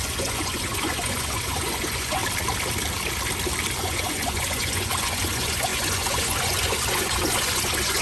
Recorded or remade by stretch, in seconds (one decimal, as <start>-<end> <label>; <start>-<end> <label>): 0.0-2.2 remade; 2.2-3.8 recorded; 3.8-8.0 remade